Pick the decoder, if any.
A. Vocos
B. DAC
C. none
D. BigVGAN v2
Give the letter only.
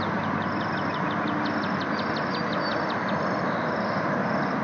C